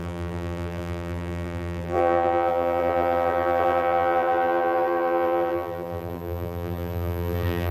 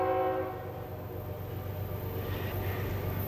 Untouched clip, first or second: second